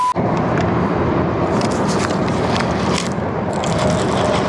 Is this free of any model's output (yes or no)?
yes